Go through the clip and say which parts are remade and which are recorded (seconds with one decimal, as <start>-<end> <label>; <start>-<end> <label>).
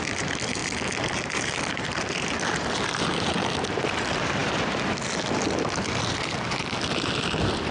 0.0-0.6 remade; 0.6-1.7 recorded; 1.7-4.4 remade; 4.4-5.9 recorded; 5.9-7.7 remade